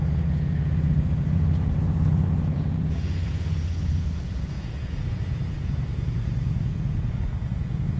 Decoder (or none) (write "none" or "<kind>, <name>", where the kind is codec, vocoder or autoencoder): vocoder, Vocos